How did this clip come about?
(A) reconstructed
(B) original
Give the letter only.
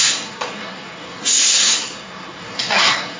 A